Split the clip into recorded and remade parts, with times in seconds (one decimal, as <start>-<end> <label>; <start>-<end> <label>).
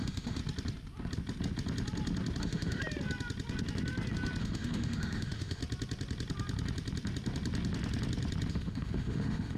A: 0.0-0.4 remade; 0.4-2.4 recorded; 2.4-2.8 remade; 2.8-4.4 recorded; 4.4-5.6 remade; 5.6-8.5 recorded; 8.5-9.6 remade